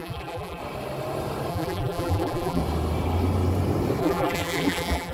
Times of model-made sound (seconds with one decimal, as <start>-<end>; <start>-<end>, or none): 0.0-0.6; 1.5-2.6; 4.0-5.1